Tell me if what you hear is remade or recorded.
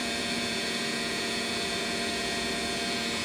remade